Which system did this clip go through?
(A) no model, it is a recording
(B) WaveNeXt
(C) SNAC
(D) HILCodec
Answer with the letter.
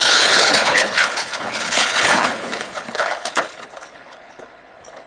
D